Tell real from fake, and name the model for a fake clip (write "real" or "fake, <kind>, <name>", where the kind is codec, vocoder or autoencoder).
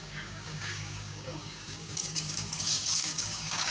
fake, codec, DAC